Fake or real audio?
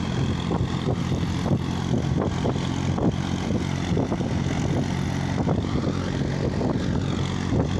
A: real